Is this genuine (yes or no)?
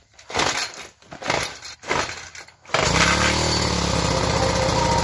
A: yes